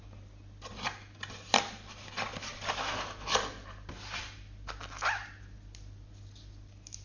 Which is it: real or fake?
real